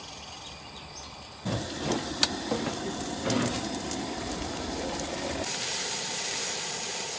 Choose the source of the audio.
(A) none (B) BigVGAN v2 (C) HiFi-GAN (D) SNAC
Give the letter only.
A